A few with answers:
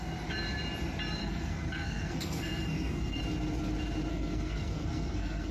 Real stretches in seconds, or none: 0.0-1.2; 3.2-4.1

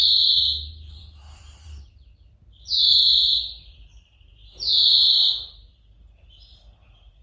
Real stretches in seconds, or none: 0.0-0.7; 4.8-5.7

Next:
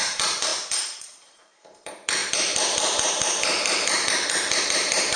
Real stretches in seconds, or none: none

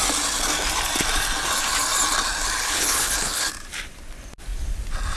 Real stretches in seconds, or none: 0.0-2.6; 3.5-5.2

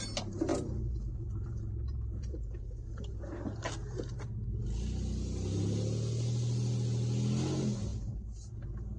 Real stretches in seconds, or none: 0.0-0.5; 3.2-7.9; 8.5-9.0